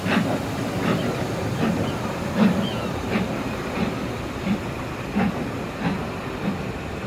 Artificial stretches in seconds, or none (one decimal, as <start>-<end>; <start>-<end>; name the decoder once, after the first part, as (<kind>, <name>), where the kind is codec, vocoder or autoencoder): none